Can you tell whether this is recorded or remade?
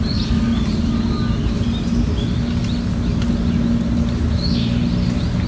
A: recorded